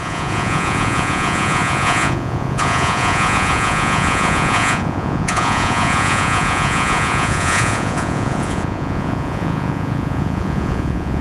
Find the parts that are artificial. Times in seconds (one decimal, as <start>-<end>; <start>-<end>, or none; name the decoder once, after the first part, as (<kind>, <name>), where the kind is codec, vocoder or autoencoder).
0.0-11.2 (vocoder, Vocos)